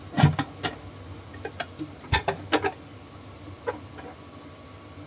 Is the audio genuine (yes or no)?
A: yes